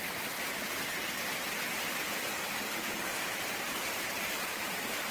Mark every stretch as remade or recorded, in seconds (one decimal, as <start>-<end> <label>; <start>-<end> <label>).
0.0-3.1 recorded; 3.1-5.1 remade